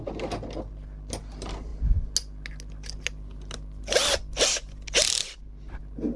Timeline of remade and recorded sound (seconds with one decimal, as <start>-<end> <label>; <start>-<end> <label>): 0.0-6.2 recorded